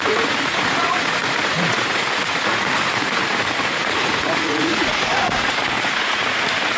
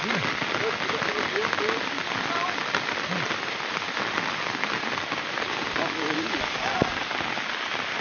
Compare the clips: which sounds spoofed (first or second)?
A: first